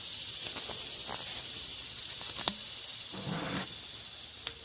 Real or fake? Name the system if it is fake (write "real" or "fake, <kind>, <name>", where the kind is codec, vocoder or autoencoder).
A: real